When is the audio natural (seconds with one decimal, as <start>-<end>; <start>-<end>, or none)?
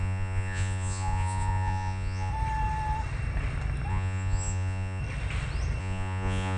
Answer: 2.3-3.9; 5.0-5.8